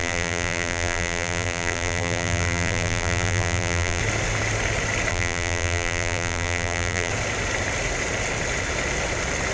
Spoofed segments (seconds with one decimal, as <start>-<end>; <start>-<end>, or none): 0.0-4.0; 5.1-7.1